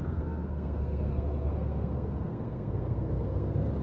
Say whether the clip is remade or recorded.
remade